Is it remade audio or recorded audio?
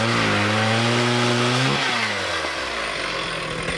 recorded